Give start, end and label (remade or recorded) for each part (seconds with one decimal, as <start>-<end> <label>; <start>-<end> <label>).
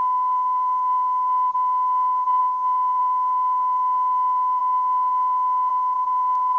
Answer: 0.0-6.6 recorded